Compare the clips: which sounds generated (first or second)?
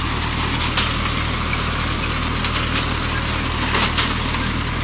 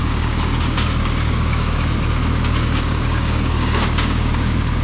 second